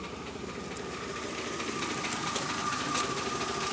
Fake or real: real